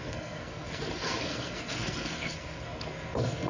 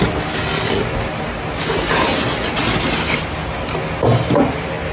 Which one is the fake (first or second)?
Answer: first